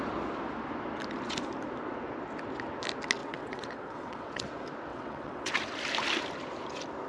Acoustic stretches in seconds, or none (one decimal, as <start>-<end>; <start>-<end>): 0.0-3.2; 4.5-4.9; 5.5-7.1